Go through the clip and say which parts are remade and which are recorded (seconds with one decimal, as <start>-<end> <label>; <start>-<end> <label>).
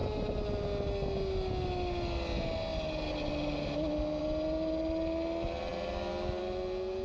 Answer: 0.0-7.0 recorded